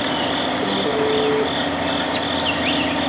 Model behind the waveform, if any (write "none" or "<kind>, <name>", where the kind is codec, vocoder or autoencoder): none